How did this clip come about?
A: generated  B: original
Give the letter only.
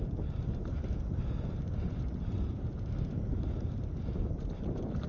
B